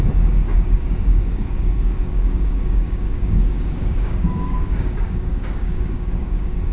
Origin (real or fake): fake